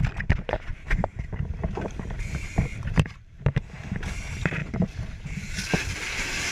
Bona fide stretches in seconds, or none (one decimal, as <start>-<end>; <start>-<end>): 0.0-0.7; 1.3-2.7; 3.9-6.5